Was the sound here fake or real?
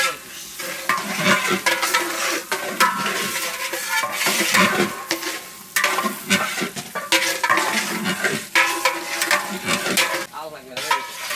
real